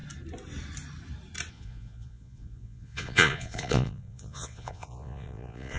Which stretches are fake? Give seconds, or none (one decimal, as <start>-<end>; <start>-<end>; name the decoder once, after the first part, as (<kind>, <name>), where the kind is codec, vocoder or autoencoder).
1.5-5.8 (vocoder, Vocos)